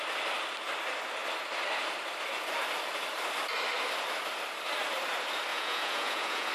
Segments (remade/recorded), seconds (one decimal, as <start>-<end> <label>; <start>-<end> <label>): 0.0-5.5 recorded; 5.5-6.5 remade